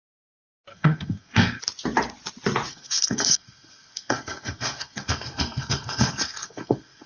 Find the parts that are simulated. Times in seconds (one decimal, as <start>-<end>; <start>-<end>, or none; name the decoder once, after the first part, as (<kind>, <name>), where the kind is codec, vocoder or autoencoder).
0.7-1.6 (codec, SNAC); 2.7-7.1